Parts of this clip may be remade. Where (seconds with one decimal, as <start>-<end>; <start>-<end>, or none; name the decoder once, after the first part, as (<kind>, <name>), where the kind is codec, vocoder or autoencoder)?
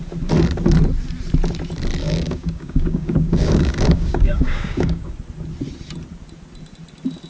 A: 2.0-5.1 (codec, DAC)